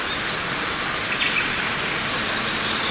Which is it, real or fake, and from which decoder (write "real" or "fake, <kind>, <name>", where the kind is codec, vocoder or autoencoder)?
real